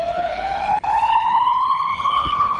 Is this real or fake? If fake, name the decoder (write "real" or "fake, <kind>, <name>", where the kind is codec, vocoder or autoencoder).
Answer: fake, codec, HILCodec